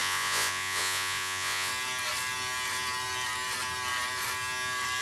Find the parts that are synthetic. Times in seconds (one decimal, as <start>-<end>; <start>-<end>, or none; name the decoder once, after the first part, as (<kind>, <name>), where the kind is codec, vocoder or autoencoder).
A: 0.0-1.7 (vocoder, Vocos)